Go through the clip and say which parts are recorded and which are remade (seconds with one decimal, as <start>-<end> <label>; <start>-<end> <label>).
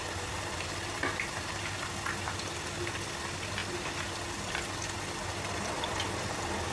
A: 0.0-6.7 recorded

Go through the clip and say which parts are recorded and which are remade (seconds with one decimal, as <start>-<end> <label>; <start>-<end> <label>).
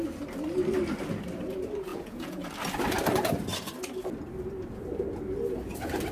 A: 0.0-1.9 recorded; 1.9-2.4 remade; 2.4-6.1 recorded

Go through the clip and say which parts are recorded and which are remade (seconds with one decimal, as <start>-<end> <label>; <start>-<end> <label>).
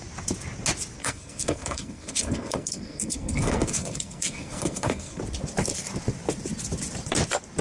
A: 0.0-1.0 recorded; 1.0-5.2 remade; 5.2-7.6 recorded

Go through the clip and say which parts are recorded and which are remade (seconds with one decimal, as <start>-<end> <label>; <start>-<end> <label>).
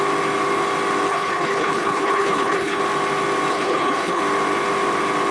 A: 0.0-1.1 recorded; 1.1-2.8 remade; 2.8-3.5 recorded; 3.5-4.2 remade; 4.2-5.3 recorded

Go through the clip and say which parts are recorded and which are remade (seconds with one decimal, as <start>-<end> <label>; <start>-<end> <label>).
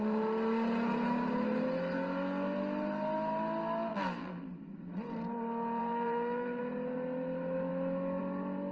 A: 0.0-3.9 recorded; 3.9-4.5 remade; 4.5-5.8 recorded; 5.8-6.6 remade; 6.6-8.7 recorded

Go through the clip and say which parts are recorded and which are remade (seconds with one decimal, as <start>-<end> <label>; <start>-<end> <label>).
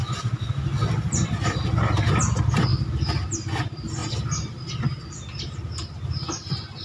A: 0.0-6.8 recorded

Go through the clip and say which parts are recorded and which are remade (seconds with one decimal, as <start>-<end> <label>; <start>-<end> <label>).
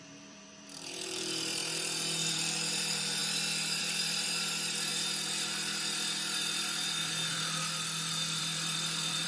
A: 0.0-1.6 remade; 1.6-2.3 recorded; 2.3-3.2 remade; 3.2-3.8 recorded; 3.8-4.9 remade; 4.9-8.4 recorded; 8.4-9.3 remade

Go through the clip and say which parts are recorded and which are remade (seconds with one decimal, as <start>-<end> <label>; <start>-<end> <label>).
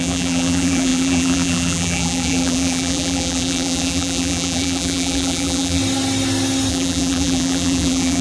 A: 0.0-5.8 remade; 5.8-6.7 recorded; 6.7-8.2 remade